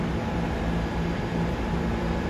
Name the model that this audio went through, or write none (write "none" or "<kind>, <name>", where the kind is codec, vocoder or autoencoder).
vocoder, BigVGAN v2